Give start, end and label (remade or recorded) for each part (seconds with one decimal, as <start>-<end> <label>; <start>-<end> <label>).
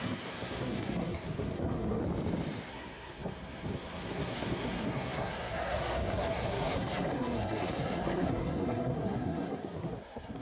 0.0-2.0 remade; 2.0-2.7 recorded; 2.7-10.4 remade